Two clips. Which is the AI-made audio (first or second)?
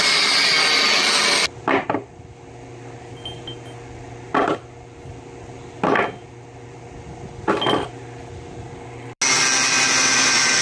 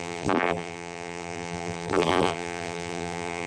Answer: second